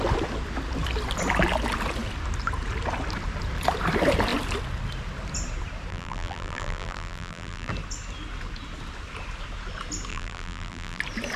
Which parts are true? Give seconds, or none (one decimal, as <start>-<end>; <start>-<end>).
0.0-5.9; 7.7-10.1; 11.0-11.4